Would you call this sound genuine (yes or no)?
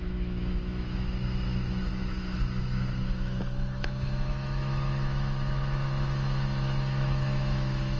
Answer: no